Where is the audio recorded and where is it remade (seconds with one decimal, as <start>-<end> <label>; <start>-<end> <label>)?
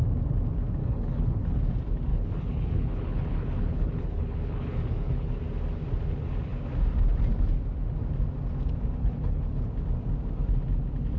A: 0.0-0.8 recorded; 0.8-1.6 remade; 1.6-2.1 recorded; 2.1-5.3 remade; 5.3-9.0 recorded; 9.0-9.7 remade; 9.7-11.2 recorded